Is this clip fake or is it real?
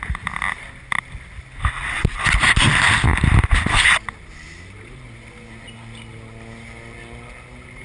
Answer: real